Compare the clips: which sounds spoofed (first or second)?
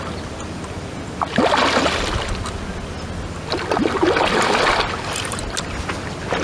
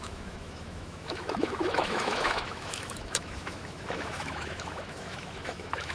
second